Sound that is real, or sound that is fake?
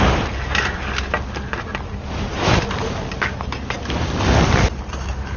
real